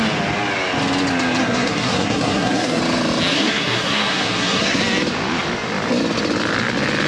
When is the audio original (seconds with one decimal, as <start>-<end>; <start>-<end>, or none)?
0.0-1.4; 2.8-3.3; 4.8-7.1

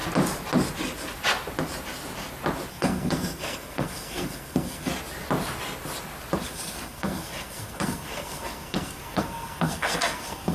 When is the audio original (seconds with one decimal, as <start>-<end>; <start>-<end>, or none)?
0.0-2.7; 4.9-6.4

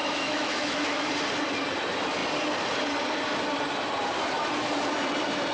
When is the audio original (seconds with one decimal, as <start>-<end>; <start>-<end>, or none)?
1.1-5.5

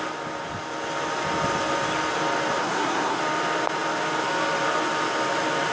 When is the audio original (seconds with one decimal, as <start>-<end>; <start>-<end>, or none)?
0.0-2.6; 3.2-5.7

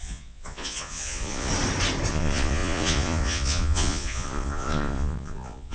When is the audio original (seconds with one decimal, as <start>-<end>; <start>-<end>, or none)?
1.5-2.1

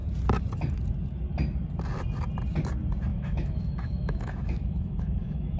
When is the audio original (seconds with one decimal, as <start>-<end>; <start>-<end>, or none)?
0.0-3.1

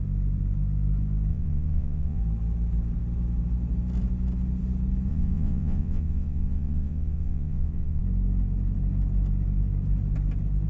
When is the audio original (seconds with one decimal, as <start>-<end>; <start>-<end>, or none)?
0.0-1.3; 2.2-5.1; 8.0-10.7